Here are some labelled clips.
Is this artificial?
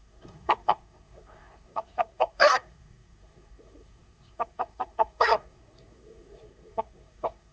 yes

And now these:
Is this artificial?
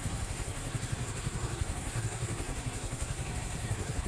yes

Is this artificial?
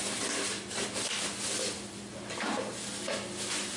no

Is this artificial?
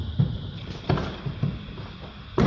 no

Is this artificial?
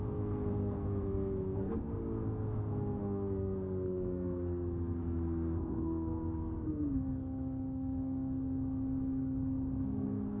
yes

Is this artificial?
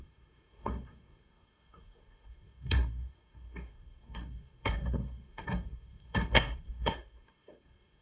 yes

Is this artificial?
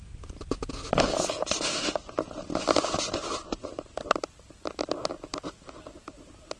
no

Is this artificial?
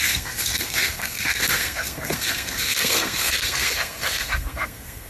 yes